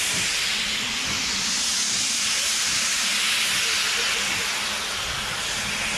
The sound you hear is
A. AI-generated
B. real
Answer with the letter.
B